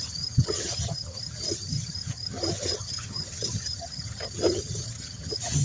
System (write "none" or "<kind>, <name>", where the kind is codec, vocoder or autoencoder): vocoder, HiFi-GAN